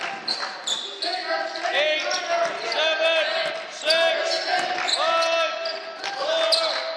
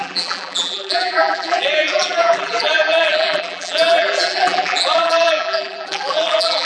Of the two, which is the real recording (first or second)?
first